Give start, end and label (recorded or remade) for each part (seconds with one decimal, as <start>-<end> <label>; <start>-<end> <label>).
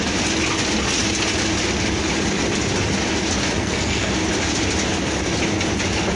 0.0-3.6 recorded; 3.6-4.1 remade; 4.1-6.2 recorded